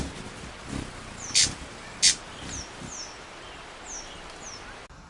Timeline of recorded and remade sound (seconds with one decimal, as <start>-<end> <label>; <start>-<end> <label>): 0.0-5.1 recorded